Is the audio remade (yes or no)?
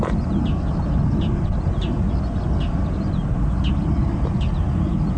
no